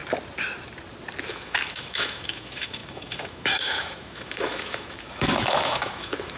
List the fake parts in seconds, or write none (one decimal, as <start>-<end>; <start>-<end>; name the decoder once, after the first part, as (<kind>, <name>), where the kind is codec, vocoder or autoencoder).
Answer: 1.3-6.4 (autoencoder, DAC-VAE)